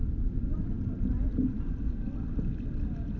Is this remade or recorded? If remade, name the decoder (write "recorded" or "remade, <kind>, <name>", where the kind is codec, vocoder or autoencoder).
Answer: recorded